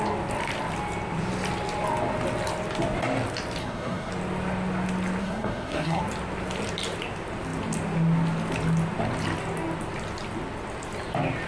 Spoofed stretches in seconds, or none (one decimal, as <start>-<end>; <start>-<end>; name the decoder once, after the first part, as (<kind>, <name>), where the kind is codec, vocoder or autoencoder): 3.6-4.1 (codec, SNAC); 5.2-6.0